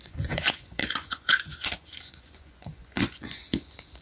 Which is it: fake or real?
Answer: fake